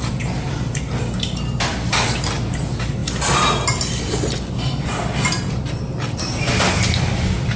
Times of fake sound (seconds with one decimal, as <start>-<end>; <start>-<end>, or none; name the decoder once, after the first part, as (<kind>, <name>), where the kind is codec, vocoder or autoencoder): none